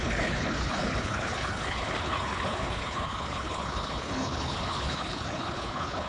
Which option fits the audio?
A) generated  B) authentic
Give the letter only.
A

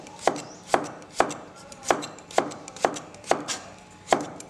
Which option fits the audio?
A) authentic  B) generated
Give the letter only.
A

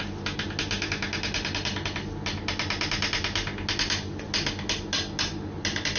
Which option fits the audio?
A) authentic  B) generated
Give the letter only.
A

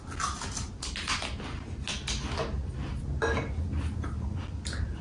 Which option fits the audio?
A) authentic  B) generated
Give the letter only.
A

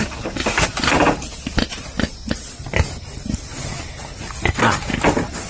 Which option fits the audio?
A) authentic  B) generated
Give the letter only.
A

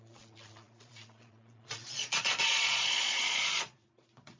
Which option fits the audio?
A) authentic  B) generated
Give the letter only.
B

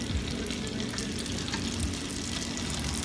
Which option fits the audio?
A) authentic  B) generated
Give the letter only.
A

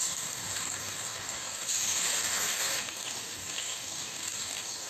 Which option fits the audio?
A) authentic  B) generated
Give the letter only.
B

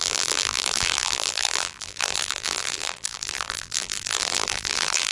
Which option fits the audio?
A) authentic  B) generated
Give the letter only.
B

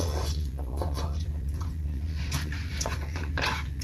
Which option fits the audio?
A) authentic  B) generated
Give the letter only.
B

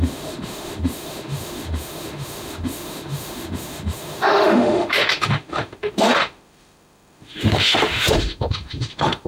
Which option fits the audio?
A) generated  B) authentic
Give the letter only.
A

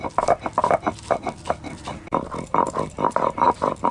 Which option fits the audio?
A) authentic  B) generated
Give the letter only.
A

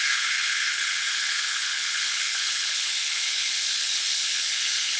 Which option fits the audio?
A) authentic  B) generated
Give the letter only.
B